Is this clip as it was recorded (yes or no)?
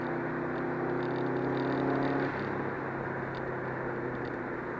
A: yes